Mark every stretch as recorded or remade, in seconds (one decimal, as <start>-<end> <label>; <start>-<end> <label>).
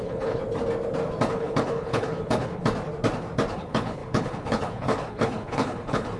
0.0-0.4 remade; 0.4-1.3 recorded; 1.3-2.6 remade; 2.6-3.5 recorded; 3.5-6.2 remade